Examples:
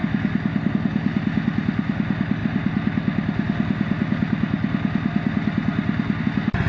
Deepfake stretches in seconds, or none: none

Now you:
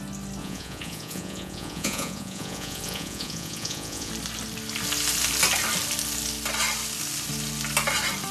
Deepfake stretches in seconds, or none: 0.4-4.1 (vocoder, Vocos)